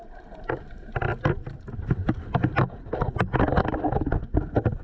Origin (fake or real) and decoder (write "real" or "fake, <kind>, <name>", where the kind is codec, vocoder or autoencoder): real